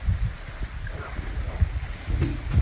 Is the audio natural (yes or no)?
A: yes